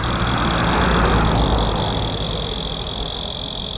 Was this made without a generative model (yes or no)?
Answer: yes